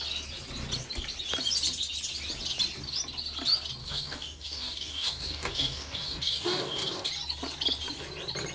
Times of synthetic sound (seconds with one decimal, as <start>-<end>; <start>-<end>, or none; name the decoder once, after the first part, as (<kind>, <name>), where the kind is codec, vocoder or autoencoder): 3.8-7.1 (codec, DAC)